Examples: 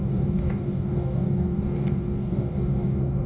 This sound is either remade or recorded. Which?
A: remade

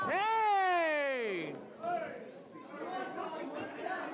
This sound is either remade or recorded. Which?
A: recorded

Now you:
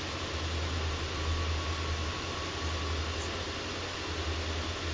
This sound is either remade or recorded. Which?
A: recorded